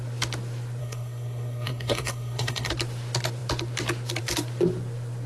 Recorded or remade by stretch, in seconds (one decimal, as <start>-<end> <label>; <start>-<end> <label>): 0.0-0.8 recorded; 0.8-2.7 remade; 2.7-5.3 recorded